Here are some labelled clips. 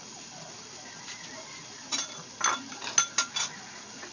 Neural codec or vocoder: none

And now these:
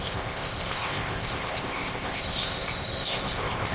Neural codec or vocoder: codec, ZipCodec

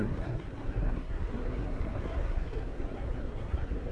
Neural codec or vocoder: codec, SNAC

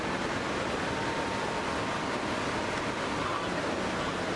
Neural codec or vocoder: none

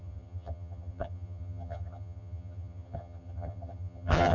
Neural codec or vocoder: vocoder, HiFi-GAN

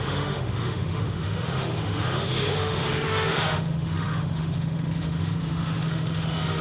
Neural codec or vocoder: autoencoder, DAC-VAE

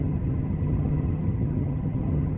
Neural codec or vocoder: vocoder, HiFi-GAN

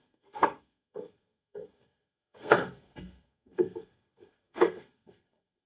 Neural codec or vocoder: codec, SNAC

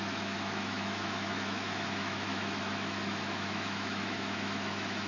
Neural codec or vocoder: autoencoder, DAC-VAE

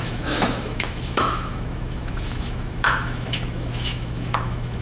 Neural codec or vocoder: autoencoder, DAC-VAE